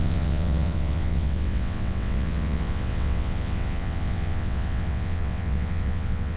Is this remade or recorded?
remade